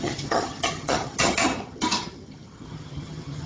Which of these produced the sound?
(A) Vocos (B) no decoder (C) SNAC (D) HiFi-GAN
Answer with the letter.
D